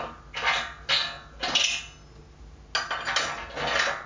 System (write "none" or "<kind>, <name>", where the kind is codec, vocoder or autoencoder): none